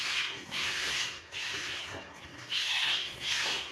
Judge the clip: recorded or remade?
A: remade